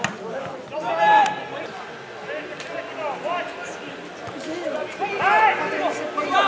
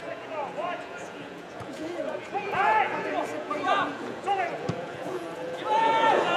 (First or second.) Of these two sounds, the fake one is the second